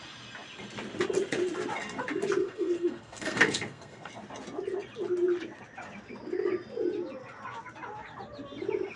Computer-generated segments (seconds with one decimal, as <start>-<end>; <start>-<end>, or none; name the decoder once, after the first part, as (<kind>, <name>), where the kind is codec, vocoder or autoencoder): 2.4-4.1 (codec, SNAC)